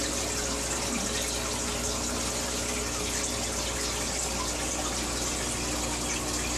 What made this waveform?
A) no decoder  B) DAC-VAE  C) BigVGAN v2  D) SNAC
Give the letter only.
A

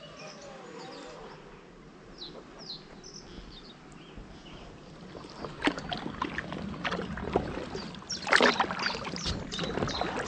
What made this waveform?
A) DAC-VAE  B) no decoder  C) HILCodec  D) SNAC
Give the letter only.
B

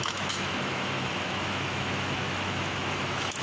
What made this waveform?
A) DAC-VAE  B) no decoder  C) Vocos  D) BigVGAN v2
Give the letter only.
A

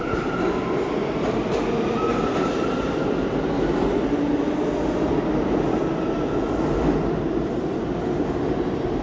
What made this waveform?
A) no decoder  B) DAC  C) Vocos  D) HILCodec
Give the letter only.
A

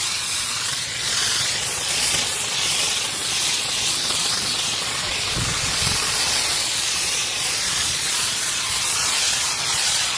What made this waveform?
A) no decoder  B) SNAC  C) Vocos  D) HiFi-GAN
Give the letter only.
C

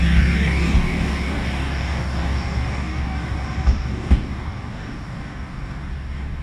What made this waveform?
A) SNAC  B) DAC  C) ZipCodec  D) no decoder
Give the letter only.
B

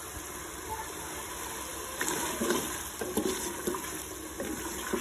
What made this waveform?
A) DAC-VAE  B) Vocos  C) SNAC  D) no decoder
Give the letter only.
D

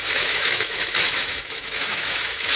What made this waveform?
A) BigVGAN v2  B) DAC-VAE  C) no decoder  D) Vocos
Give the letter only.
B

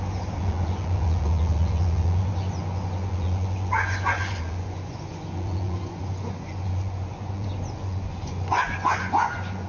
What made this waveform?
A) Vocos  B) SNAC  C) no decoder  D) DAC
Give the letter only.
A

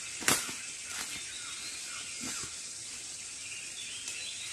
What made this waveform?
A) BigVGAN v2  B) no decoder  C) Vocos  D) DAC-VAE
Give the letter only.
B